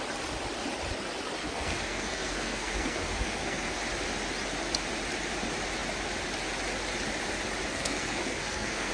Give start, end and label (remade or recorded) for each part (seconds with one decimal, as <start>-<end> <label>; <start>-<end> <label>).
0.0-1.4 recorded; 1.4-3.8 remade; 3.8-7.7 recorded; 7.7-8.9 remade